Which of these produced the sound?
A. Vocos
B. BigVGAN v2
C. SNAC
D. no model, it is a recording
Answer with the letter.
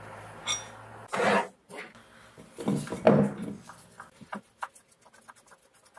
D